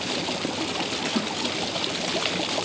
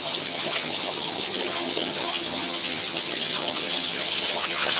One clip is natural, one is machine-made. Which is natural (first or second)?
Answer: first